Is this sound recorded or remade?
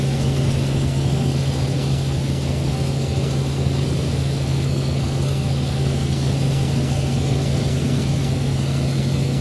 remade